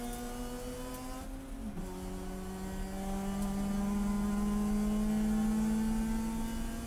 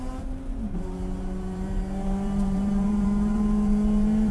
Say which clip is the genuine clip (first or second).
first